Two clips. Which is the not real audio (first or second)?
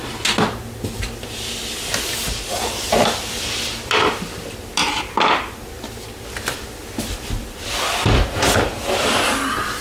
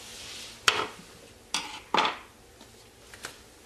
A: first